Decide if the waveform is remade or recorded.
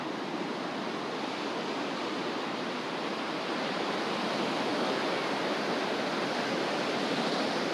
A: recorded